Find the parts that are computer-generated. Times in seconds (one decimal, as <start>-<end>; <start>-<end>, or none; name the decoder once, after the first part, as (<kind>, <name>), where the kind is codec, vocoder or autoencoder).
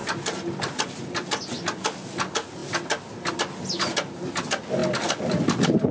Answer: none